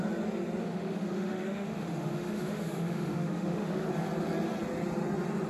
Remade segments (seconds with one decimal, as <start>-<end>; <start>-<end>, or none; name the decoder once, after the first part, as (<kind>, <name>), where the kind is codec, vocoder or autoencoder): 0.6-3.9 (autoencoder, DAC-VAE)